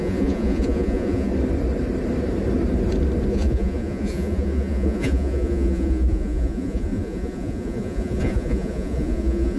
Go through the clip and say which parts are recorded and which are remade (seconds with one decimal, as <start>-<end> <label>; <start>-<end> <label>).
0.0-1.3 remade; 1.3-3.3 recorded; 3.3-9.6 remade